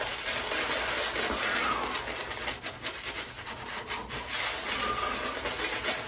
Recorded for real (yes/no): yes